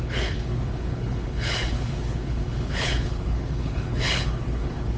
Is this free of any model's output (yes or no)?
no